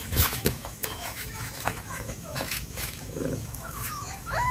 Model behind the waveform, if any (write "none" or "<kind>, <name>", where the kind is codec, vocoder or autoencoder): autoencoder, DAC-VAE